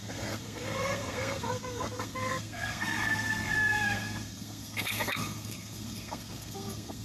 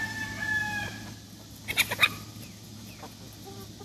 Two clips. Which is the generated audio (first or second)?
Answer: first